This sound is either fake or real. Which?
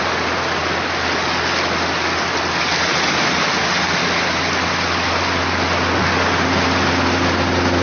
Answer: real